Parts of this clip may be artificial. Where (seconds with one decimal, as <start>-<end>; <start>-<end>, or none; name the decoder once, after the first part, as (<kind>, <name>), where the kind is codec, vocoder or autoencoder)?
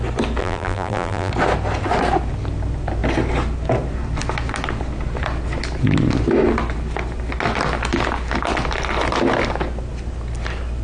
0.4-1.3 (vocoder, BigVGAN v2)